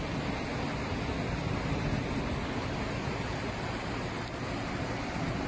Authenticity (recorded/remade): recorded